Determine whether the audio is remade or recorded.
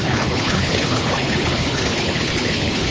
remade